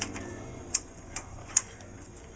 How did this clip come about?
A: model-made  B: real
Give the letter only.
A